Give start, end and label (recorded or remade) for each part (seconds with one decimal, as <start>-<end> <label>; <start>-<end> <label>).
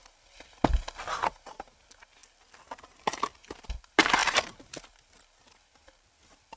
0.0-6.6 recorded